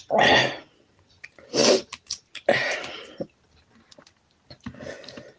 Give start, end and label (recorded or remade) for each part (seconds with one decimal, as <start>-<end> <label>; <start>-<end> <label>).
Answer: 0.0-5.4 recorded